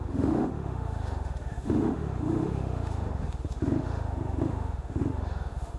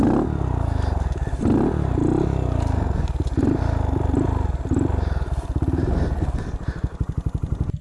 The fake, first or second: first